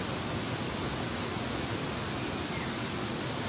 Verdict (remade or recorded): recorded